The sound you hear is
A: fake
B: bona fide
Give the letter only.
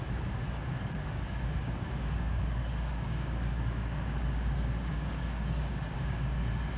A